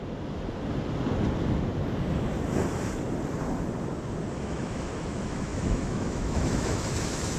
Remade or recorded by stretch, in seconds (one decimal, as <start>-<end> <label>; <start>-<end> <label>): 0.0-4.3 recorded; 4.3-7.4 remade